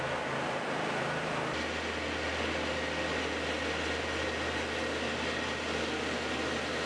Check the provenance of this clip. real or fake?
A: real